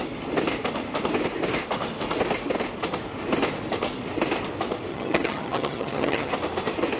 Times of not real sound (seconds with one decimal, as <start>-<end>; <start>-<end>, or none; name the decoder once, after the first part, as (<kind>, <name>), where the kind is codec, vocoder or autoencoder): 4.9-6.3 (vocoder, HiFi-GAN)